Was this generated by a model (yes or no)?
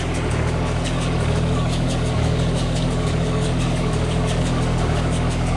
yes